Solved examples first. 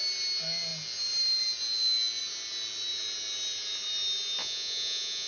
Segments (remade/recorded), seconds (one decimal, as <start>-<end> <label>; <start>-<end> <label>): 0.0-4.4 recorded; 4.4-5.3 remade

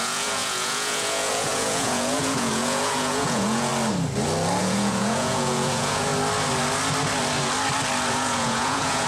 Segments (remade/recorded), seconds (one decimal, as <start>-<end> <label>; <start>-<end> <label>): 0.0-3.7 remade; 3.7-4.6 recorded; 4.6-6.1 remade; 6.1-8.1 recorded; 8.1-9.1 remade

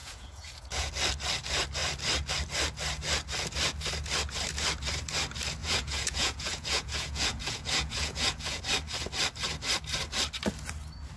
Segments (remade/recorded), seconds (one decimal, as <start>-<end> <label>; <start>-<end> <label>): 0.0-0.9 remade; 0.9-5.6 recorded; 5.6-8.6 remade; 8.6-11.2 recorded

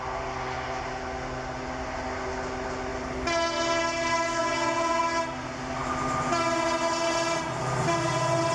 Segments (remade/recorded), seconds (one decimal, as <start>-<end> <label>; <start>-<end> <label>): 0.0-4.4 recorded; 4.4-5.0 remade; 5.0-8.5 recorded

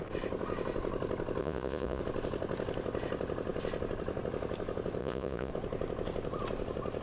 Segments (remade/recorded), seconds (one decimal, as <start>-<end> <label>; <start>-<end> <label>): 0.0-1.4 recorded; 1.4-2.0 remade; 2.0-5.0 recorded; 5.0-5.5 remade; 5.5-7.0 recorded